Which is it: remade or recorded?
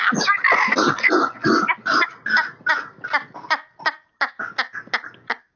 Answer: recorded